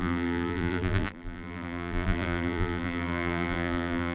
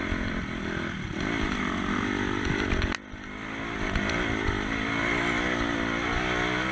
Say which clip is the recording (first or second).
second